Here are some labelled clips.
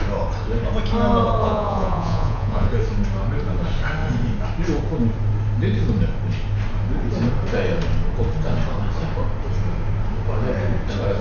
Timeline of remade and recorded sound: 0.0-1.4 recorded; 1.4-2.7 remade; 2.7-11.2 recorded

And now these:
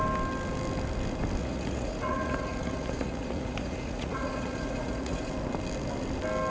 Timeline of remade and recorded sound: 0.0-1.4 recorded; 1.4-5.3 remade; 5.3-6.5 recorded

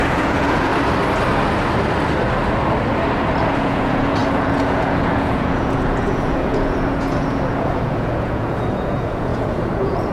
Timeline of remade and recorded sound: 0.0-0.7 remade; 0.7-3.5 recorded; 3.5-10.1 remade